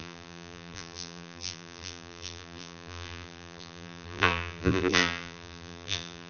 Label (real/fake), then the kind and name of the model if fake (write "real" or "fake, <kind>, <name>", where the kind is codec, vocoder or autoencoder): fake, vocoder, BigVGAN v2